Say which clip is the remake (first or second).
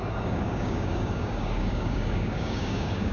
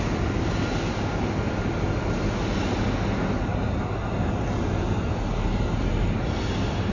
first